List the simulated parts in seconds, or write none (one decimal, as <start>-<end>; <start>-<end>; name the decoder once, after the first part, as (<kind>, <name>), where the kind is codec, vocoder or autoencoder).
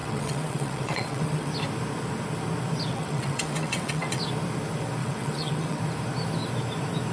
0.0-1.5 (vocoder, WaveNeXt); 2.9-4.2; 5.0-5.8